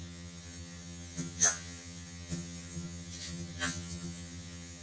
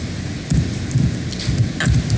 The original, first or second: second